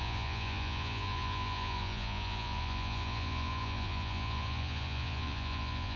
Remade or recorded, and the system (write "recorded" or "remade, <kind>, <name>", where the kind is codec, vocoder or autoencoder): remade, vocoder, Vocos